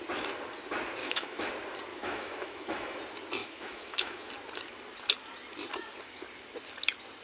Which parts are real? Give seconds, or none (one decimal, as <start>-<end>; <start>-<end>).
0.0-1.0; 1.5-1.9; 3.0-3.4; 4.3-7.2